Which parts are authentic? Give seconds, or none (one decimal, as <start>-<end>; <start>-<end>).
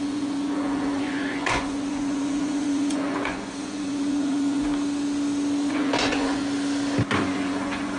4.7-5.7; 6.4-7.2